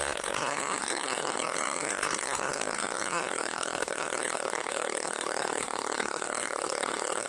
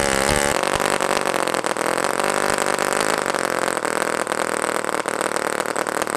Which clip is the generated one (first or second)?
first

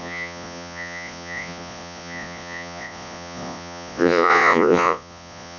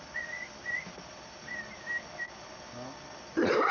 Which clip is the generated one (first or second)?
first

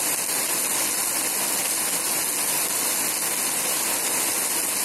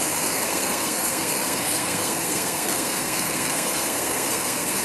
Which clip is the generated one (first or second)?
second